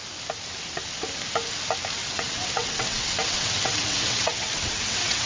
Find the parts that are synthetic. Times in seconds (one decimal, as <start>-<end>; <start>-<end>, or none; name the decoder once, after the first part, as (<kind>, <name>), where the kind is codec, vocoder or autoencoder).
2.0-5.3 (vocoder, WaveNeXt)